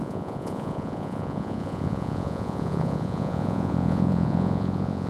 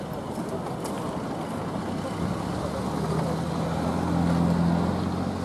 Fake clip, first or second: first